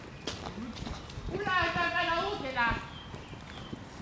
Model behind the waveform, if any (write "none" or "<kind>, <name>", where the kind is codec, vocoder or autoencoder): none